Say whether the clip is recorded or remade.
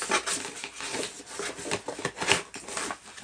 recorded